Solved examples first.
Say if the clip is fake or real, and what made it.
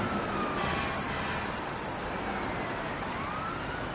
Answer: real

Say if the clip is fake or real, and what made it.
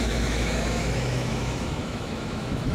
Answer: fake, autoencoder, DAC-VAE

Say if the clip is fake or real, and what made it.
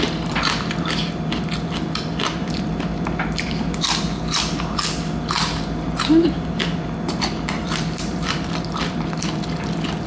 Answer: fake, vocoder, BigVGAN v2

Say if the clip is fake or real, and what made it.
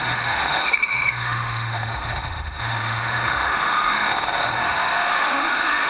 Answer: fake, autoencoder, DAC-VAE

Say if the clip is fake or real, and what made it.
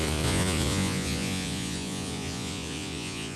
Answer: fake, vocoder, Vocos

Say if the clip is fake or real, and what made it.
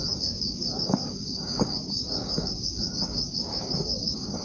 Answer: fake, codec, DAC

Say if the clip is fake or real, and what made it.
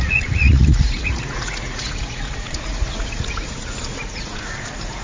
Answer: fake, vocoder, Vocos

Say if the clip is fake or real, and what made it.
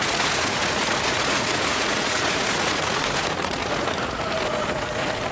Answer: fake, vocoder, Vocos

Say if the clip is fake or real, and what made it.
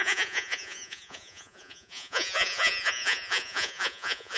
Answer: fake, vocoder, Vocos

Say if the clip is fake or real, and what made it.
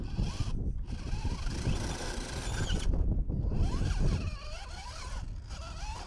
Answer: real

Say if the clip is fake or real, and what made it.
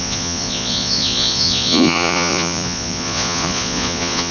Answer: fake, vocoder, Vocos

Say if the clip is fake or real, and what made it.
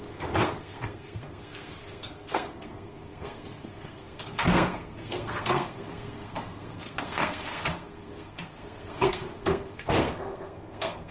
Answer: fake, codec, SNAC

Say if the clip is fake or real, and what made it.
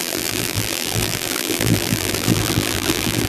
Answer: fake, vocoder, BigVGAN v2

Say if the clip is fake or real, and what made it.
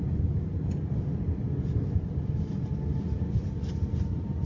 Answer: real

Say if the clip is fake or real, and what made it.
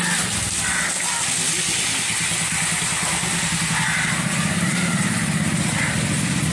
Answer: real